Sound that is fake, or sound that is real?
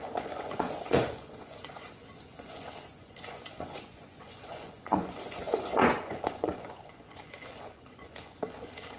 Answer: fake